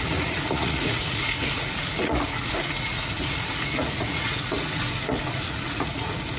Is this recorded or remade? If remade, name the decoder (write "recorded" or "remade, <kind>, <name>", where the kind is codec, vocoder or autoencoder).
remade, vocoder, Vocos